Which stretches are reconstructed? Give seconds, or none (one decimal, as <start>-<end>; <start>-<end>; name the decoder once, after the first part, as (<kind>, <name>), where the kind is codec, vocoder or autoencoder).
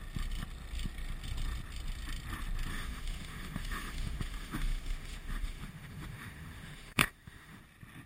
2.7-7.6 (autoencoder, DAC-VAE)